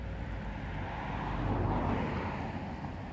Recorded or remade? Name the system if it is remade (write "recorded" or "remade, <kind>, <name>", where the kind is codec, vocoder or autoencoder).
recorded